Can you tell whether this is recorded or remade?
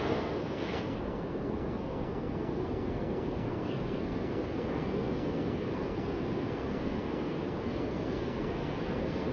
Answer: remade